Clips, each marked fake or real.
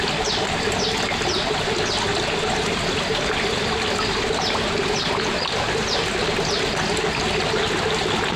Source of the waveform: real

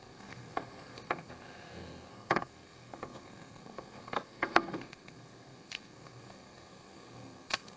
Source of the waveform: fake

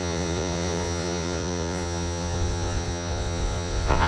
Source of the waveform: fake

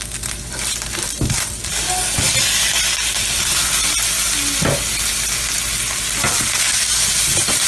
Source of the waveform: real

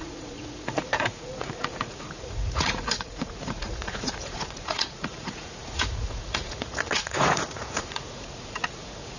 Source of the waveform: fake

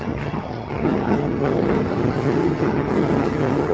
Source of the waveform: fake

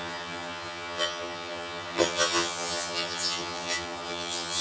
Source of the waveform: fake